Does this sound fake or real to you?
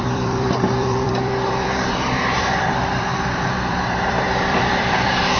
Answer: fake